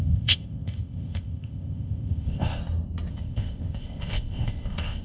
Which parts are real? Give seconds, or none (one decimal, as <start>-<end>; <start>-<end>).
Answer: 2.6-3.1